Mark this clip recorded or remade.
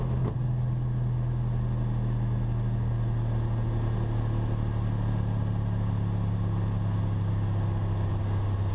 recorded